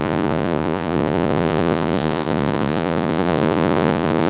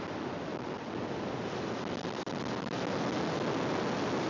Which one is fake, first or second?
first